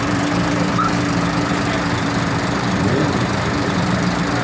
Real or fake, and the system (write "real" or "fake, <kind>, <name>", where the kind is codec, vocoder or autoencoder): fake, vocoder, BigVGAN v2